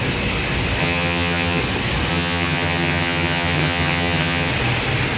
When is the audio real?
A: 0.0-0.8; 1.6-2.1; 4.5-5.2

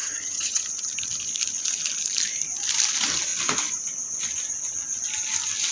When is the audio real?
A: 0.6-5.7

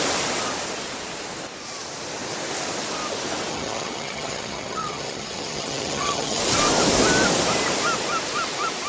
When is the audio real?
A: 0.0-3.5; 6.4-8.9

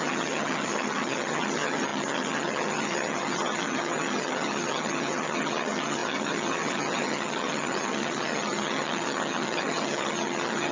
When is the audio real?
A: none